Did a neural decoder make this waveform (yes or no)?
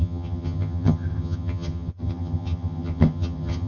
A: yes